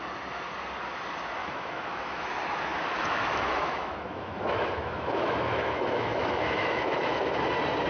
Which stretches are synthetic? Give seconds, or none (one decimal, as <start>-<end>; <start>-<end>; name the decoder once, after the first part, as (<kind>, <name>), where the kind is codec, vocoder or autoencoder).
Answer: 1.4-2.3 (autoencoder, DAC-VAE); 2.7-7.4